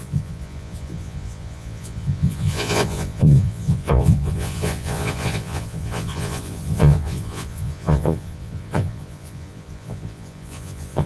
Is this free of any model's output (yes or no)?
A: no